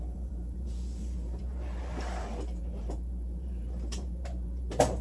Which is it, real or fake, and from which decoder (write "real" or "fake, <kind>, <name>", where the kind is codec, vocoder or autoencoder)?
fake, vocoder, BigVGAN v2